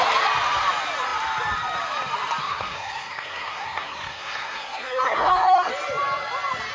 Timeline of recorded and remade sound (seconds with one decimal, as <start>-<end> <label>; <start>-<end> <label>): 0.0-2.4 recorded; 2.4-5.7 remade; 5.7-6.7 recorded